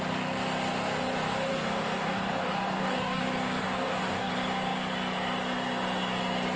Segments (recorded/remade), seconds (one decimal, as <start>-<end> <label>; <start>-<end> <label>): 0.0-1.5 recorded; 1.5-3.2 remade; 3.2-3.6 recorded; 3.6-4.3 remade; 4.3-6.6 recorded